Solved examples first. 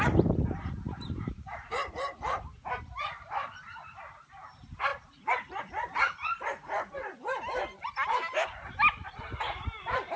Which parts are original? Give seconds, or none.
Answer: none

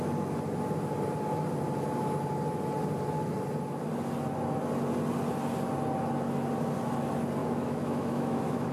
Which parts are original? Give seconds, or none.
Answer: 0.0-7.4

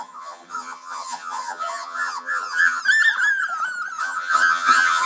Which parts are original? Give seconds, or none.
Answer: 2.8-4.0